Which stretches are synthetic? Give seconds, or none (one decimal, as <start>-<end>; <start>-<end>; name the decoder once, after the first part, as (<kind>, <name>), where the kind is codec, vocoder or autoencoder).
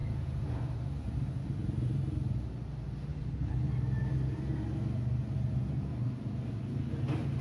3.1-3.7 (codec, HILCodec)